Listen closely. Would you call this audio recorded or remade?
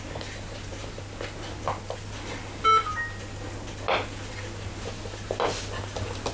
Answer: recorded